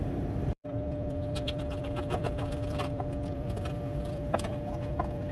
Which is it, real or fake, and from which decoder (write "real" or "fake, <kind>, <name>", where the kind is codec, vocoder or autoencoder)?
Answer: fake, vocoder, BigVGAN v2